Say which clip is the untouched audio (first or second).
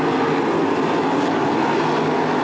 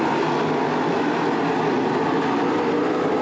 first